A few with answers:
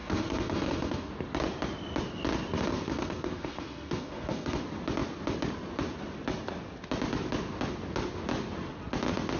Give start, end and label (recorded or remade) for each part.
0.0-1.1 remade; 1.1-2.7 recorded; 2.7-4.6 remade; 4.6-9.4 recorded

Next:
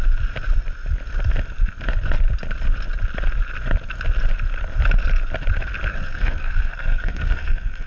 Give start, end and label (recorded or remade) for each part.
0.0-5.9 recorded; 5.9-7.9 remade

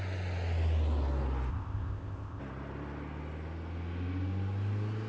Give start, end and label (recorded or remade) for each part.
0.0-1.5 recorded; 1.5-2.4 remade; 2.4-5.1 recorded

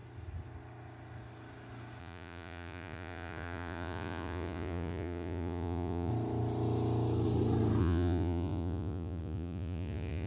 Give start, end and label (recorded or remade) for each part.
0.0-2.0 recorded; 2.0-6.1 remade; 6.1-7.8 recorded; 7.8-10.3 remade

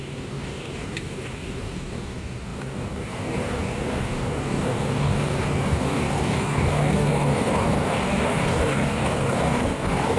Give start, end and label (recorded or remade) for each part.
0.0-10.2 remade

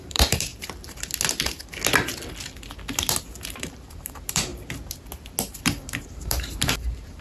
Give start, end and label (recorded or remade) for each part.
0.0-0.5 remade; 0.5-3.6 recorded; 3.6-4.5 remade; 4.5-5.4 recorded; 5.4-7.2 remade

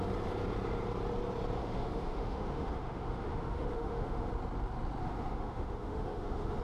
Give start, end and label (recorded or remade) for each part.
0.0-1.6 recorded; 1.6-4.3 remade; 4.3-5.0 recorded; 5.0-6.6 remade

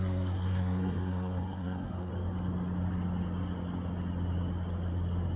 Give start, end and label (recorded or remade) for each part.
0.0-2.1 remade; 2.1-5.4 recorded